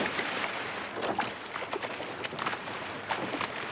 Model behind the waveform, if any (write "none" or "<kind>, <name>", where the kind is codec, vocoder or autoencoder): none